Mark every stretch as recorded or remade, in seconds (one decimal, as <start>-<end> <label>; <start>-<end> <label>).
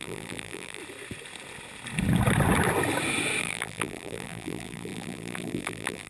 0.0-0.8 remade; 0.8-3.4 recorded; 3.4-6.1 remade